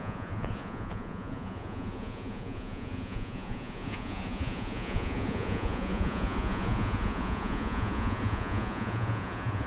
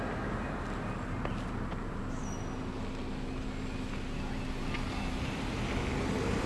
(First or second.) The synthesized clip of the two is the first